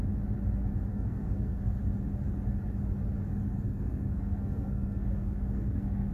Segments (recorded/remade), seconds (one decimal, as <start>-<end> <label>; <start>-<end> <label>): 0.0-0.9 recorded; 0.9-1.8 remade; 1.8-3.3 recorded; 3.3-6.1 remade